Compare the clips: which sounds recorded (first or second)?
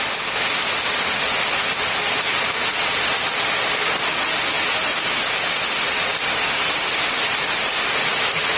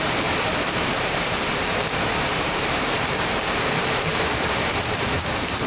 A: first